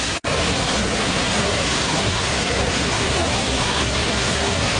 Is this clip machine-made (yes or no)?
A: yes